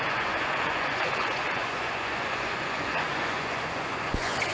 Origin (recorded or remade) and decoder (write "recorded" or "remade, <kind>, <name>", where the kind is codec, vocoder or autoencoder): remade, vocoder, Vocos